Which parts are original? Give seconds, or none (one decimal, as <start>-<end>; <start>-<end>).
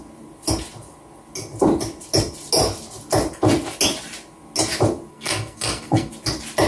0.0-5.1; 6.1-6.7